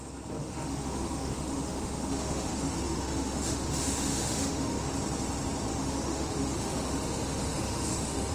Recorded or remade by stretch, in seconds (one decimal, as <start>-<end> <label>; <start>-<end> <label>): 0.0-0.4 recorded; 0.4-4.9 remade; 4.9-5.7 recorded; 5.7-8.3 remade

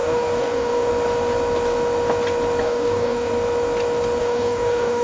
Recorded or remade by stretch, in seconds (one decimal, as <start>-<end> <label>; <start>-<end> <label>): 0.0-0.9 remade; 0.9-2.6 recorded; 2.6-3.3 remade; 3.3-4.2 recorded; 4.2-5.0 remade

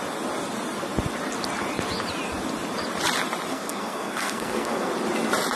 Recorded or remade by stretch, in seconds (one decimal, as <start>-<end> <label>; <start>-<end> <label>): 0.0-3.5 recorded; 3.5-4.9 remade; 4.9-5.6 recorded

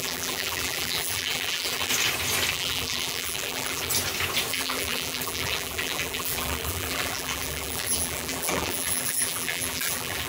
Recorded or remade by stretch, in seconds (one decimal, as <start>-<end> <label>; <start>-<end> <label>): 0.0-1.9 remade; 1.9-2.5 recorded; 2.5-3.9 remade; 3.9-4.5 recorded; 4.5-10.3 remade